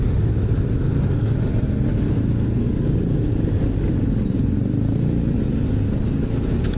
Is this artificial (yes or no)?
no